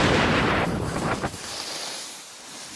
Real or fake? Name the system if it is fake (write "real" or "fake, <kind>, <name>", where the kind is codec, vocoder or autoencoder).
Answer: fake, vocoder, BigVGAN v2